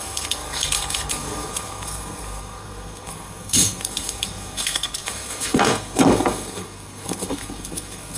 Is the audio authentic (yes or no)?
no